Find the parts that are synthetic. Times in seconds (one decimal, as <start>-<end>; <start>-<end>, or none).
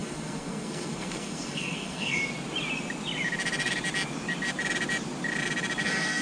0.0-2.2; 5.8-6.2